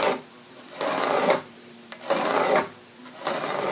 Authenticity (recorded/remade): recorded